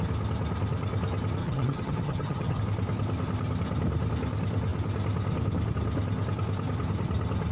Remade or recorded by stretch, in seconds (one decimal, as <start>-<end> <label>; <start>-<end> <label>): 0.0-1.4 recorded; 1.4-2.6 remade; 2.6-7.5 recorded